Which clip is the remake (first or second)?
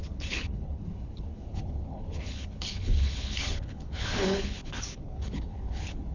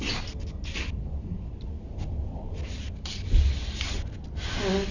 first